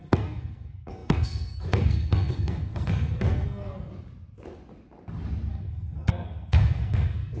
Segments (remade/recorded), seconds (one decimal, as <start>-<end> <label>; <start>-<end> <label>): 0.0-3.9 remade; 3.9-5.5 recorded; 5.5-7.4 remade